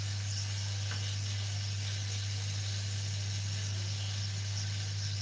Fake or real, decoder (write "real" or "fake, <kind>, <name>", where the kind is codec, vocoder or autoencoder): real